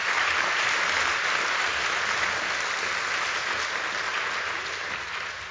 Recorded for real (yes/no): yes